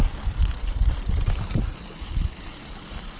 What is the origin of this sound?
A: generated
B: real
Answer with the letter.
B